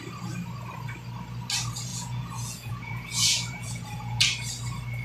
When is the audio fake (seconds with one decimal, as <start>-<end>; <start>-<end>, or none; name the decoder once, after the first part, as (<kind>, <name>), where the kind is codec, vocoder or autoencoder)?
1.9-4.2 (vocoder, Vocos)